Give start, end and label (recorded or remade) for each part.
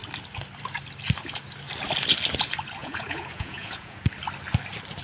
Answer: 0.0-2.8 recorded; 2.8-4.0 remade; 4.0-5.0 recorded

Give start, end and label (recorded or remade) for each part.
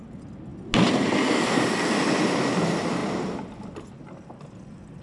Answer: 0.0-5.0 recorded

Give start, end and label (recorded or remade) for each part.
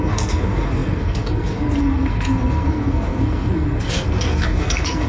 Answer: 0.0-5.1 remade